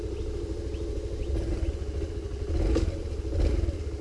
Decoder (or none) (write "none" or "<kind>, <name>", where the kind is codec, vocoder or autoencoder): none